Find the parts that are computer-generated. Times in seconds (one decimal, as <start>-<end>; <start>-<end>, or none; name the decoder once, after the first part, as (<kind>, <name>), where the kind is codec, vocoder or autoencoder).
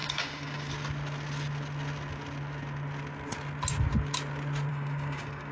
0.0-0.7 (codec, DAC); 4.7-5.5